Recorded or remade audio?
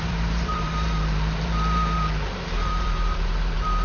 remade